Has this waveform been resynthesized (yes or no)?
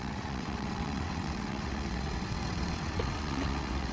yes